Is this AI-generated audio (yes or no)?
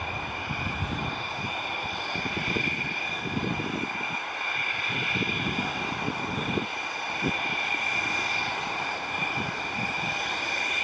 no